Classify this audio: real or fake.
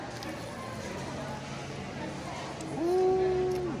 real